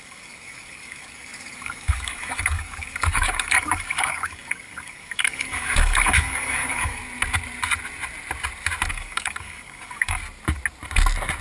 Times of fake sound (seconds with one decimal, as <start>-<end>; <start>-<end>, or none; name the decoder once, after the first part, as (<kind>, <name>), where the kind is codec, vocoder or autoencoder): 0.0-7.0 (codec, DAC); 8.9-10.2